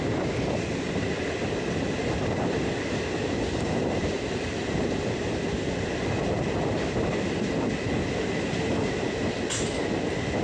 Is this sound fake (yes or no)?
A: no